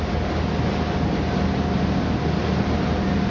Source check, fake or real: real